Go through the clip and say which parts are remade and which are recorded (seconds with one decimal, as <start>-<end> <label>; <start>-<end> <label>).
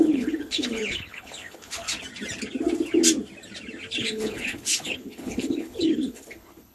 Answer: 0.0-1.9 remade; 1.9-4.0 recorded; 4.0-6.7 remade